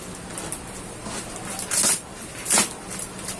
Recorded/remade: recorded